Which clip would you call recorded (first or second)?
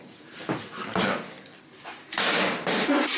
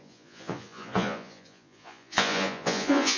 first